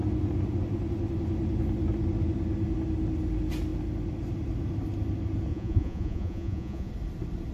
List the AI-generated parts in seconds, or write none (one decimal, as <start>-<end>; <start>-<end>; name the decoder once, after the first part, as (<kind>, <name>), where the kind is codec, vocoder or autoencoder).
5.5-6.9 (vocoder, Vocos)

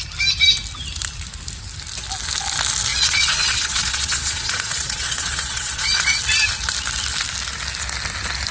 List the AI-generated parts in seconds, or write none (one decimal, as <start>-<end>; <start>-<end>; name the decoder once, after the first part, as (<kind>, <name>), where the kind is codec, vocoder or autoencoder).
2.9-6.2 (vocoder, Vocos)

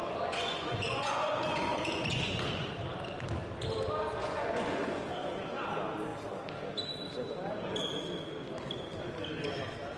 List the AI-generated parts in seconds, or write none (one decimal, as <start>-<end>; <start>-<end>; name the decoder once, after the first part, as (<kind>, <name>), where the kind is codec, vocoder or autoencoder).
0.0-2.7 (vocoder, Vocos); 4.2-5.1

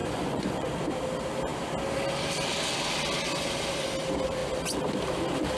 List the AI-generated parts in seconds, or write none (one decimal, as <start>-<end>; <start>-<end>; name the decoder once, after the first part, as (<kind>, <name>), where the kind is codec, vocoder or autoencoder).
0.0-0.7 (vocoder, Vocos)